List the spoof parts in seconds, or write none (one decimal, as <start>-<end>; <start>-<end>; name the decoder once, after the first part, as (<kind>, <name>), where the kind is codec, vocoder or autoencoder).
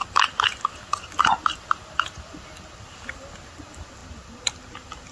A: 0.0-3.1 (vocoder, BigVGAN v2); 4.0-4.6